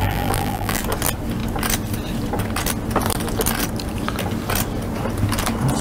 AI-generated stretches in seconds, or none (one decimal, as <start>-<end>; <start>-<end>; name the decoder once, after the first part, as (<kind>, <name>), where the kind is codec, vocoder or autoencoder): 0.0-0.8 (vocoder, BigVGAN v2)